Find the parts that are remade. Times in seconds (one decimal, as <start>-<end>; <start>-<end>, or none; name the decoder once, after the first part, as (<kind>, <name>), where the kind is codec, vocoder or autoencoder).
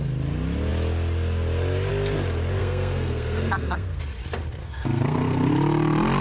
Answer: 2.6-4.0 (codec, SNAC); 4.6-5.5